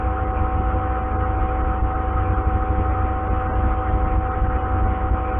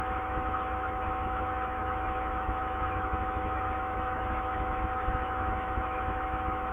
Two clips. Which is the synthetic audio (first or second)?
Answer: second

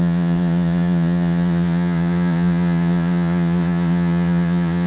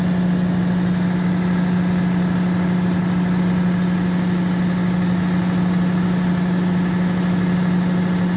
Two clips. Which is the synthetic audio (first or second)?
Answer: first